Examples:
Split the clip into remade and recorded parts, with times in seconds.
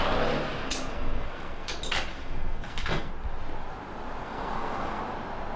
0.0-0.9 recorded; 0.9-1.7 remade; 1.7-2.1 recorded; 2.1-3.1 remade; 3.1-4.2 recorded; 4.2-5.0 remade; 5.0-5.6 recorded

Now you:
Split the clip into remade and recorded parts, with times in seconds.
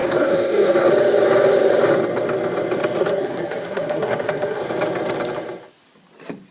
0.0-0.9 remade; 0.9-3.0 recorded; 3.0-4.6 remade; 4.6-6.5 recorded